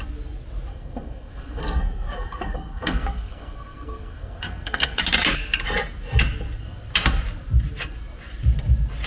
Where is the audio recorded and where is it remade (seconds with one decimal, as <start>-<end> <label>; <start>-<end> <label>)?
0.0-0.7 recorded; 0.7-5.0 remade; 5.0-9.1 recorded